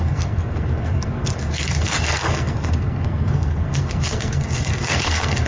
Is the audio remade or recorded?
remade